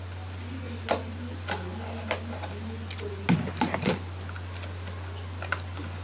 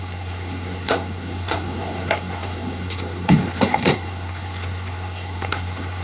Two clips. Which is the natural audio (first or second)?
first